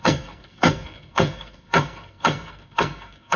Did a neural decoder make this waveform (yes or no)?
yes